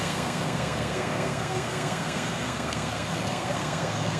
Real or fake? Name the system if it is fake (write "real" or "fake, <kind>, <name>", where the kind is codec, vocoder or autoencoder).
fake, codec, SNAC